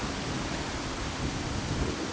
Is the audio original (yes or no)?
yes